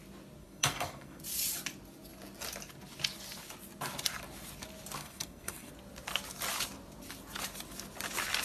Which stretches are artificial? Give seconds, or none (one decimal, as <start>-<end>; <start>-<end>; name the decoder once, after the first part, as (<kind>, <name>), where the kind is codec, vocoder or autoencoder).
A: 0.4-1.2 (codec, SNAC); 5.0-5.7